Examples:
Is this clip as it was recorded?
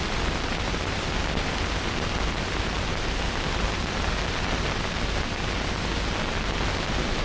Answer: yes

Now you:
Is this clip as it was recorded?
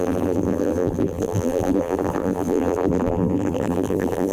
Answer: no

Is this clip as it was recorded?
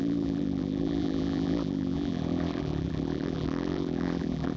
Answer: no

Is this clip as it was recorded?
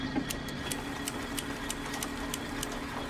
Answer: yes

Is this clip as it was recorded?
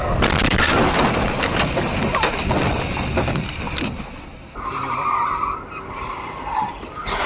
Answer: no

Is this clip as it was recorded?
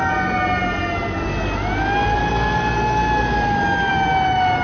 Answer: yes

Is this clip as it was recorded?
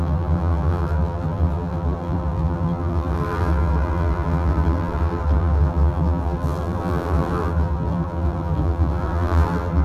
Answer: no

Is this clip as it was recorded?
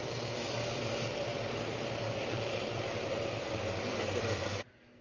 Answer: no